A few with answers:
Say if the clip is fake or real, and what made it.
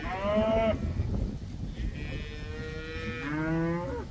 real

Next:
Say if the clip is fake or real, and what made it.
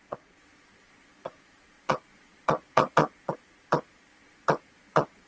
fake, vocoder, Vocos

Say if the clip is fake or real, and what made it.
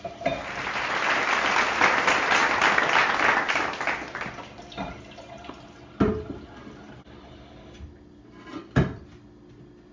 real